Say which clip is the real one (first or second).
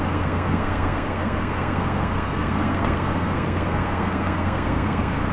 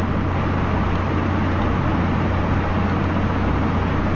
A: second